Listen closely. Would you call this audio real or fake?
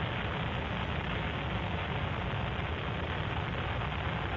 real